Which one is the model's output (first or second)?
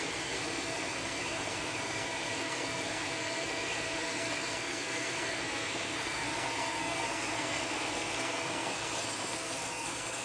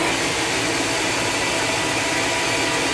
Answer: first